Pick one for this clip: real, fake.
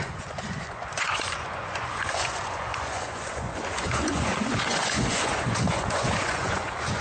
fake